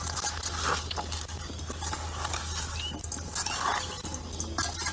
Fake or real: real